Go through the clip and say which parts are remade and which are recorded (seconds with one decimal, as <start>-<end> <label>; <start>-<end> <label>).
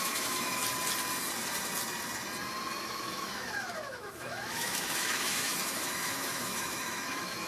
0.0-0.6 remade; 0.6-2.8 recorded; 2.8-7.5 remade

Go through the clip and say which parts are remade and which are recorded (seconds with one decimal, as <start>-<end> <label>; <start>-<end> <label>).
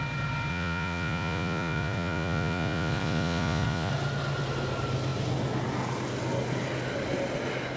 0.0-0.5 recorded; 0.5-3.9 remade; 3.9-7.8 recorded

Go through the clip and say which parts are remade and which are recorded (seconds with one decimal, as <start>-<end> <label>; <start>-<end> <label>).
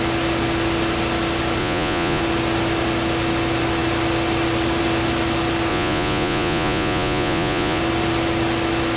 0.0-1.6 recorded; 1.6-2.2 remade; 2.2-5.7 recorded; 5.7-7.8 remade; 7.8-9.0 recorded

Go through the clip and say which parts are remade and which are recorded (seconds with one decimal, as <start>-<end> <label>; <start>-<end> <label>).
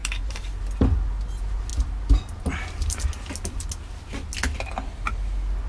0.0-0.6 remade; 0.6-5.7 recorded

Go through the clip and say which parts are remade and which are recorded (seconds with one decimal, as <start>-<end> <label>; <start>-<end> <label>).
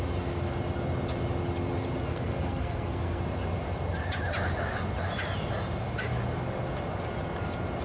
0.0-2.1 recorded; 2.1-3.2 remade; 3.2-7.8 recorded